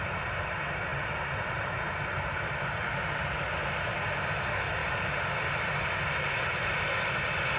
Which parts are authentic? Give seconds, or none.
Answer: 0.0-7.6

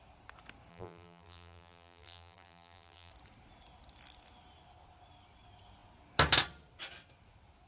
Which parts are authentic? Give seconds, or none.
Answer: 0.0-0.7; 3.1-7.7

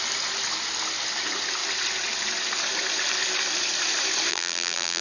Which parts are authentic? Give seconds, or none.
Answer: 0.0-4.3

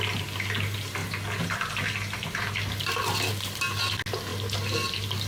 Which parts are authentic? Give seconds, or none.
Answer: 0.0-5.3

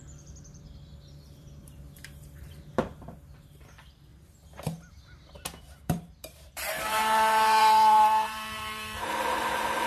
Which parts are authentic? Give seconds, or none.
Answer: 4.1-5.6